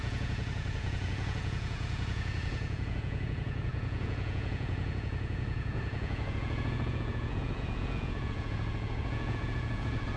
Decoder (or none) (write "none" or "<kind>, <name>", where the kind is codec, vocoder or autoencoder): vocoder, Vocos